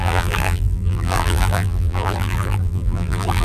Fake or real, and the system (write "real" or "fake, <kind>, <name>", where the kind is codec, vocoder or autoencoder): fake, vocoder, BigVGAN v2